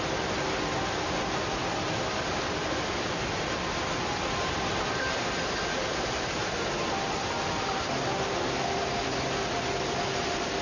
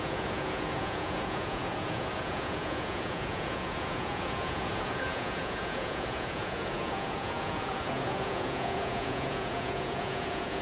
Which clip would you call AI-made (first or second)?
second